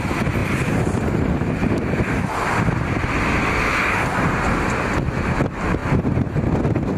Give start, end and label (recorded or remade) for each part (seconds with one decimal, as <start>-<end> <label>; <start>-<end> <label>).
0.0-7.0 recorded